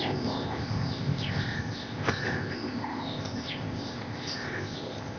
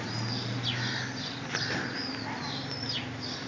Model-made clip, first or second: first